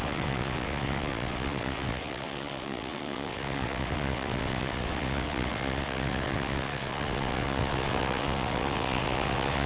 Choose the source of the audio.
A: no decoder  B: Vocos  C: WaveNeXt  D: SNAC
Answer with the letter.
C